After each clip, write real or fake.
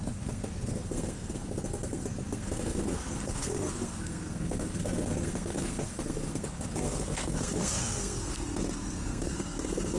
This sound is fake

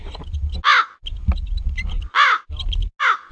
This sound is real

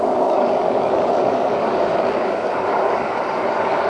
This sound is fake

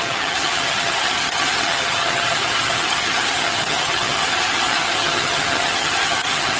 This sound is fake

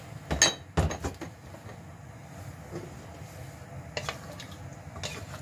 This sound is real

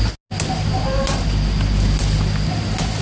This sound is real